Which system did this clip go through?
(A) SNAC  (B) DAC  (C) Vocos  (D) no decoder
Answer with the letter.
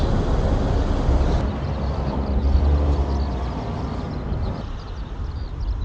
D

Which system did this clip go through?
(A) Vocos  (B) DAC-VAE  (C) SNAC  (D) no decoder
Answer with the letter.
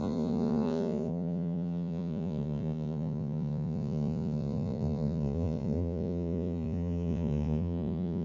A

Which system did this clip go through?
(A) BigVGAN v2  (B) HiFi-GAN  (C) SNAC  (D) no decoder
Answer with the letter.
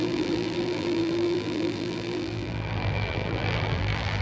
A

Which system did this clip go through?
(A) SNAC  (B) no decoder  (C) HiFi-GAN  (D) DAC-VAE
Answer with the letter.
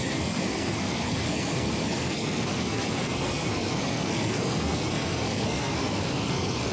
A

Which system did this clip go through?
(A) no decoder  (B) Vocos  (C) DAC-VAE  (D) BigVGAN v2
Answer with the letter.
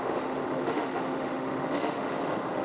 C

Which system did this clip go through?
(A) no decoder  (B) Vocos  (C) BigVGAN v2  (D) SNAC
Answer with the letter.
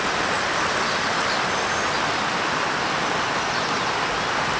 A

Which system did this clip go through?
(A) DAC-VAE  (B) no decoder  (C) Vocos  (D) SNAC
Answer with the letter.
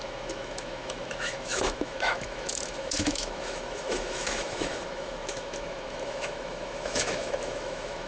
A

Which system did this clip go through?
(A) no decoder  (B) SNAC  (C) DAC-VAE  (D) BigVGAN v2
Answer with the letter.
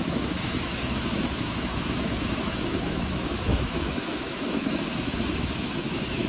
C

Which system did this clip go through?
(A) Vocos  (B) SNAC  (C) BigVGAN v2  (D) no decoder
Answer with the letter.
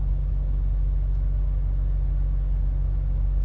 D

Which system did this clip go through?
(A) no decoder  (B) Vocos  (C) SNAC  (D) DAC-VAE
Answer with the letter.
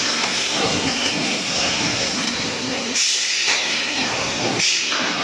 C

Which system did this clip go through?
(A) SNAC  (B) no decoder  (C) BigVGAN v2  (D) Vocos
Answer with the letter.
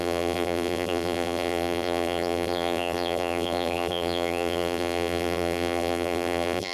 C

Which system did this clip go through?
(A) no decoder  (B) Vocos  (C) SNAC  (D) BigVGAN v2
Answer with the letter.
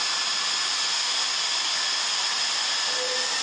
A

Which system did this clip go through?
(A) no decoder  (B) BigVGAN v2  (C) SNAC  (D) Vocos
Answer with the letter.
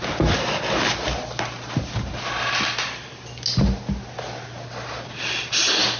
A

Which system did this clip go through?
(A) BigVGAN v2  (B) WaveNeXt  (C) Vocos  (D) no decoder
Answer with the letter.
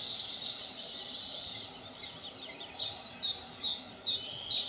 A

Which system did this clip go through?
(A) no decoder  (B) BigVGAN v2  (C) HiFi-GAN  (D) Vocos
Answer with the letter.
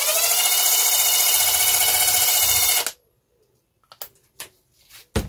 A